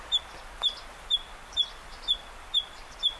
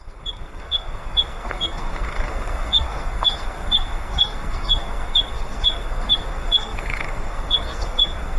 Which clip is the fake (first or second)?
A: second